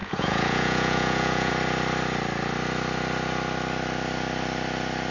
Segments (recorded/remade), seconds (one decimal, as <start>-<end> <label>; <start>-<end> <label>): 0.0-1.5 remade; 1.5-5.1 recorded